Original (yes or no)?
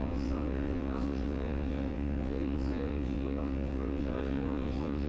no